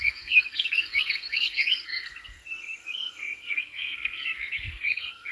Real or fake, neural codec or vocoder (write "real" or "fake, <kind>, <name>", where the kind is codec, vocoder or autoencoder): fake, codec, SNAC